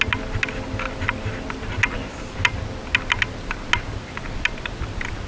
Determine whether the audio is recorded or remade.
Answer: recorded